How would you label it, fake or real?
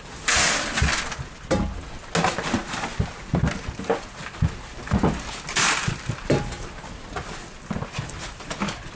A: real